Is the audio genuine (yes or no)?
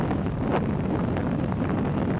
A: yes